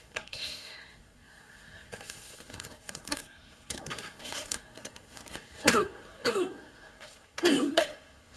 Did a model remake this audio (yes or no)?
yes